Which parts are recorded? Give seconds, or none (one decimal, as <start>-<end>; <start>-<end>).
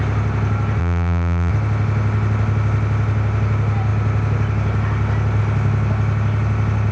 0.0-0.8; 1.5-6.9